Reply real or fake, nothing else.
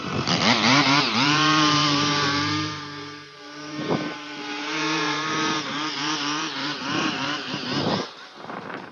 fake